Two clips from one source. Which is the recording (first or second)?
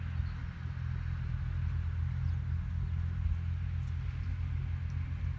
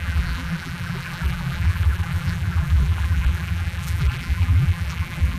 first